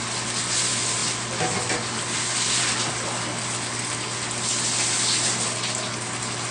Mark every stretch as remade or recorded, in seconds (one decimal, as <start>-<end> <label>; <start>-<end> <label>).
0.0-6.5 recorded